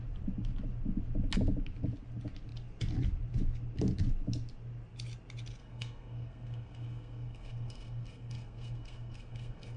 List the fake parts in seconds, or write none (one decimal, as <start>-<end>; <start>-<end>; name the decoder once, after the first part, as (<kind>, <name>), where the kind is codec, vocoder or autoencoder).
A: 5.6-9.8 (codec, SNAC)